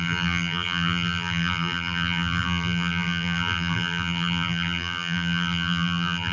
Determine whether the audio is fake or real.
fake